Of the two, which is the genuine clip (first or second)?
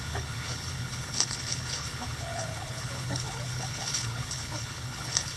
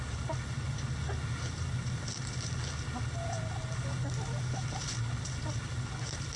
second